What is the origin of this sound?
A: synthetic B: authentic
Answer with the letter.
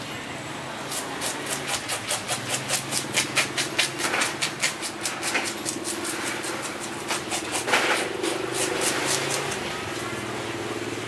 B